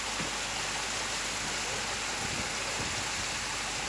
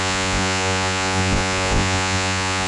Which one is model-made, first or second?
second